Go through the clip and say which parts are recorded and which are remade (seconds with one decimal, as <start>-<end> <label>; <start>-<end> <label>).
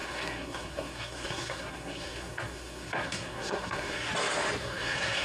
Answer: 0.0-4.1 remade; 4.1-4.6 recorded; 4.6-5.2 remade